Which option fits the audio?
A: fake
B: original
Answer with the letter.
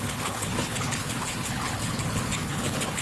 A